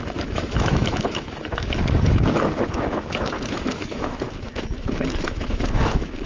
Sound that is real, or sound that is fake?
fake